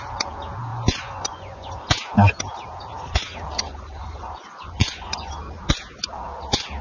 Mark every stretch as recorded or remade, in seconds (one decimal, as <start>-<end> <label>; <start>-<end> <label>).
0.0-0.7 recorded; 0.7-1.7 remade; 1.7-3.6 recorded; 3.6-5.3 remade; 5.3-6.8 recorded